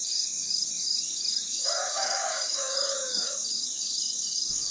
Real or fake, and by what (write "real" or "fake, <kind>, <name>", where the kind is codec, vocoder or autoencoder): fake, codec, DAC